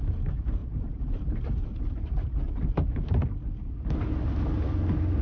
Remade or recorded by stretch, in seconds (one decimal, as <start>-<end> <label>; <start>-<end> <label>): 0.0-0.6 recorded; 0.6-3.7 remade; 3.7-5.2 recorded